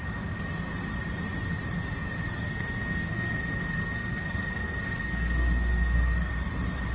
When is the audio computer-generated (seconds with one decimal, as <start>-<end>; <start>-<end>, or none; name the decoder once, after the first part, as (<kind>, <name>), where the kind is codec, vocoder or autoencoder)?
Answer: 2.2-6.3 (codec, SNAC)